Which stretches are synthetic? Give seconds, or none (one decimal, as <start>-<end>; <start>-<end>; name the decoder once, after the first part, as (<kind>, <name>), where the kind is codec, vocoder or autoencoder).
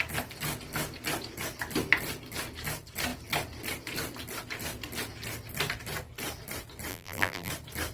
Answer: 6.9-7.5 (vocoder, BigVGAN v2)